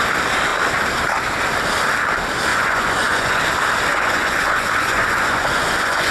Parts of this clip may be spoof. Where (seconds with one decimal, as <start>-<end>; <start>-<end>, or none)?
2.5-3.4; 3.9-6.1